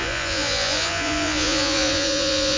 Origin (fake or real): fake